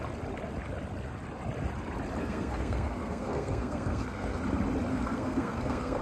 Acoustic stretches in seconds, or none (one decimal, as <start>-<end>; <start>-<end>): 0.0-2.2; 4.4-4.9

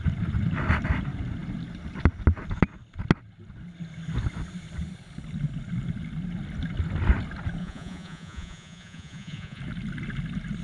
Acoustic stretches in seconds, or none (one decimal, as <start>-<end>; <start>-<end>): 0.0-7.6; 9.6-10.6